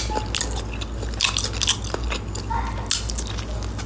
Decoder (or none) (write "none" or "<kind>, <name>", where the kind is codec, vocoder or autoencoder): none